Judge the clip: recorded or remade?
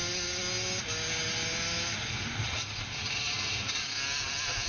recorded